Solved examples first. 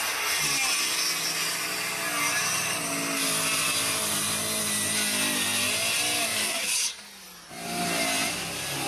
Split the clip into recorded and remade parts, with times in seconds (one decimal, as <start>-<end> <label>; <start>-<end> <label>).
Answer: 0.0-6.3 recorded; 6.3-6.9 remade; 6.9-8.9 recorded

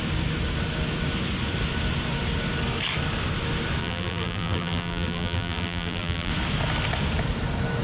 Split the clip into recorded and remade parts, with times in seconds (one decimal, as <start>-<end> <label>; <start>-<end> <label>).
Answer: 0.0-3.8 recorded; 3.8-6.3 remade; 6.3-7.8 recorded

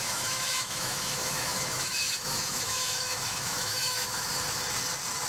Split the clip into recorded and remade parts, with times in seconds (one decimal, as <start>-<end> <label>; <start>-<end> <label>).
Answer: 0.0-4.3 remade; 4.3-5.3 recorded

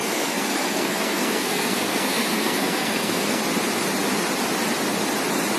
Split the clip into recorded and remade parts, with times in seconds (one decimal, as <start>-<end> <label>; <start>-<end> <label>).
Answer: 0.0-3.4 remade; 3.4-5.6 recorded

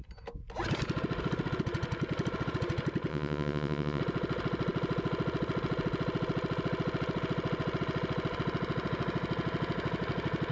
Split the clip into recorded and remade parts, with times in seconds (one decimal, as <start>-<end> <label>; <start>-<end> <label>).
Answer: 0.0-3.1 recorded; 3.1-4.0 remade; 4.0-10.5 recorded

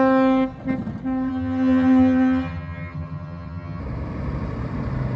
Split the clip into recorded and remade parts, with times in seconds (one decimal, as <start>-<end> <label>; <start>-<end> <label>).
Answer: 0.0-1.3 recorded; 1.3-3.8 remade; 3.8-5.2 recorded

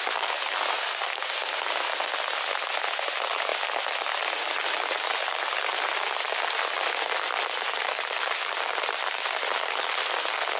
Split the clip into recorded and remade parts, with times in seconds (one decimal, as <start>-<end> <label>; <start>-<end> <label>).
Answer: 0.0-10.6 recorded

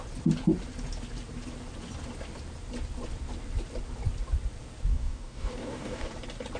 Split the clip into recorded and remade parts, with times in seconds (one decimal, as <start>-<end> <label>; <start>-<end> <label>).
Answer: 0.0-4.9 recorded; 4.9-6.1 remade; 6.1-6.6 recorded